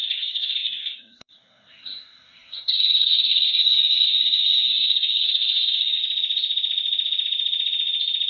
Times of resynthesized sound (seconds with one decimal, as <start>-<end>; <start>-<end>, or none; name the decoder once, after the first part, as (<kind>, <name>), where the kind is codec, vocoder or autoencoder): 0.0-6.0 (codec, SNAC)